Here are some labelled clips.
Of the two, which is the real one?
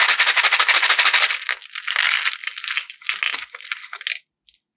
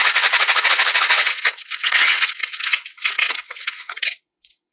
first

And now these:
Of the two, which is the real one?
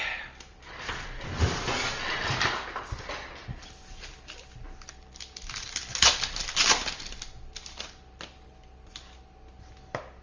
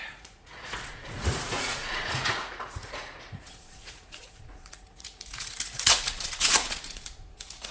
first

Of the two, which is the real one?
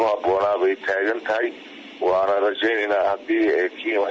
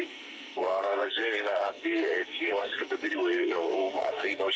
first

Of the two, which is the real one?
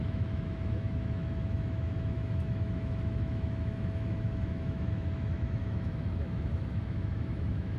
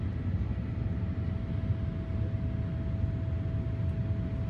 second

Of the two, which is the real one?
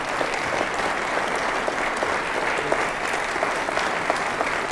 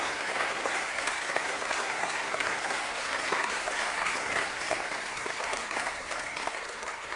first